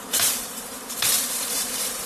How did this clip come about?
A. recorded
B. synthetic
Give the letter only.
B